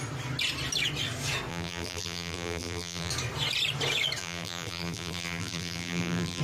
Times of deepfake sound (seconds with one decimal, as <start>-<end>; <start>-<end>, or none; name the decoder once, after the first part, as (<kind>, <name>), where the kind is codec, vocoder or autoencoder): 1.5-3.1 (vocoder, BigVGAN v2); 4.2-6.4

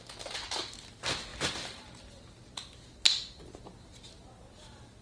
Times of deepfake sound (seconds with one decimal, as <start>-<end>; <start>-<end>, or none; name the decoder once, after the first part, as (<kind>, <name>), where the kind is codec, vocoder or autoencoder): none

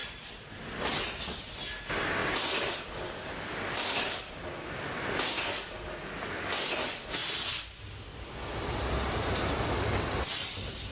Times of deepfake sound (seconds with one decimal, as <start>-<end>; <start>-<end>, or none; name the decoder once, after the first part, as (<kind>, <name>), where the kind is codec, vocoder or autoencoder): 0.0-0.6 (vocoder, BigVGAN v2); 2.2-4.9; 8.5-10.3

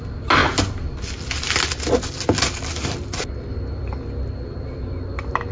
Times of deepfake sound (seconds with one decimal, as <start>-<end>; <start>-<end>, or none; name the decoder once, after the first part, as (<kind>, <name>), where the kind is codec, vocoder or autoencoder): none

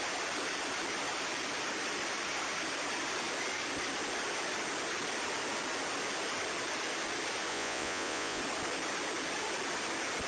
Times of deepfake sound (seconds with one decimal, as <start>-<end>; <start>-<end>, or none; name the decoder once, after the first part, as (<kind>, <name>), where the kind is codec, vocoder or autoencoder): 7.5-8.4 (vocoder, Vocos)

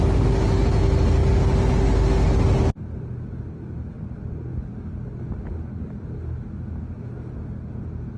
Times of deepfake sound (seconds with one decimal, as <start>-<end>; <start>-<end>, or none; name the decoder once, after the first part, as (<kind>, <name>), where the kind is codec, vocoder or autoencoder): none